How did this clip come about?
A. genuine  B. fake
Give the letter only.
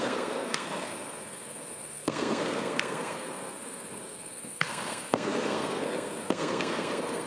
B